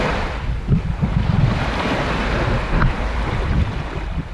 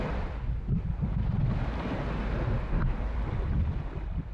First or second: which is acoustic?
second